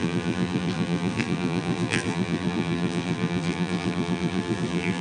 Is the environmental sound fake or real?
fake